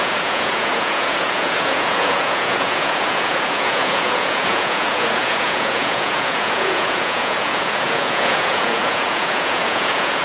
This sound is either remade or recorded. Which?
remade